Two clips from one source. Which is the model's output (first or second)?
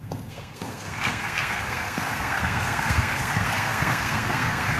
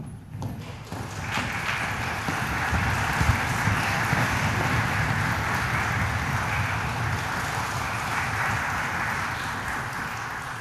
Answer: first